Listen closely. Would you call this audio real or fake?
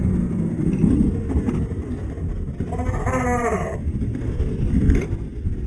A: real